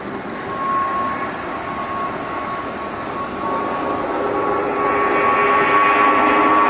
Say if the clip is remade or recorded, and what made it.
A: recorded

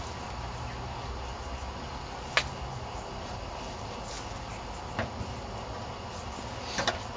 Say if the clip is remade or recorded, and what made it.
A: recorded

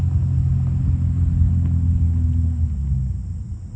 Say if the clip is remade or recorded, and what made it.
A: recorded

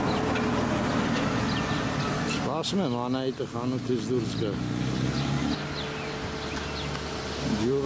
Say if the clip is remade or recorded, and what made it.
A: recorded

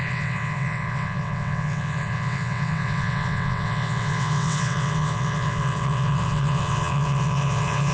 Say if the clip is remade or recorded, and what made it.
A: remade, vocoder, WaveNeXt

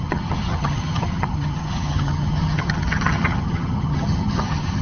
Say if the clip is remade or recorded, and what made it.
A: remade, vocoder, HiFi-GAN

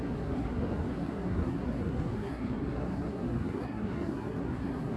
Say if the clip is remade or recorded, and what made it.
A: remade, codec, SNAC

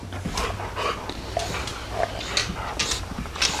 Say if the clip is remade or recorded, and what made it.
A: recorded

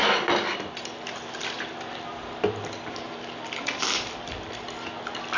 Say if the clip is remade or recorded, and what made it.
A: recorded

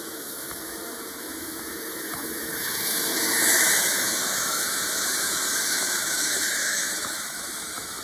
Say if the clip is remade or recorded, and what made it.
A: remade, autoencoder, DAC-VAE